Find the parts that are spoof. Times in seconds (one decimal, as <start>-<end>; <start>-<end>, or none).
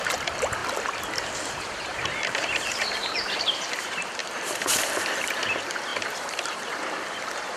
0.0-0.6; 1.5-7.6